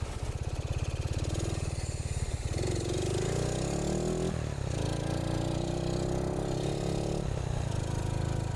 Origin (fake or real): real